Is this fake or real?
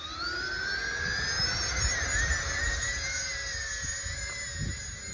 real